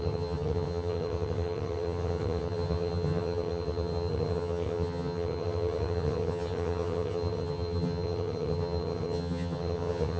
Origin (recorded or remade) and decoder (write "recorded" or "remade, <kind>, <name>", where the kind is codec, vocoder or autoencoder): remade, vocoder, HiFi-GAN